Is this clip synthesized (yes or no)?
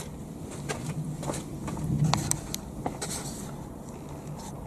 no